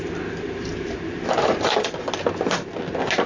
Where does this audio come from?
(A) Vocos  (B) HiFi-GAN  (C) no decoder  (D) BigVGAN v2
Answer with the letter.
C